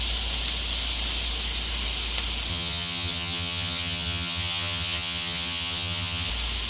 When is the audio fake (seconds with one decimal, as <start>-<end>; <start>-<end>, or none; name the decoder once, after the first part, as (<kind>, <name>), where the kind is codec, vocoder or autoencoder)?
2.5-6.3 (vocoder, HiFi-GAN)